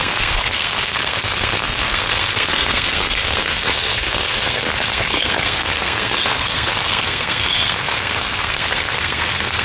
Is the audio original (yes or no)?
no